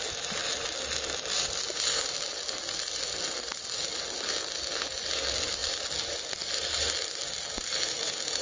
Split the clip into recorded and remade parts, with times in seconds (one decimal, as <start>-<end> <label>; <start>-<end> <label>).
0.0-8.4 recorded